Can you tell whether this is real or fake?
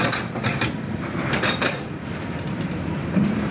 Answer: fake